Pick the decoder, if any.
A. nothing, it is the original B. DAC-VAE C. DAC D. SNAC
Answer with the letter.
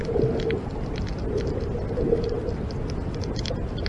A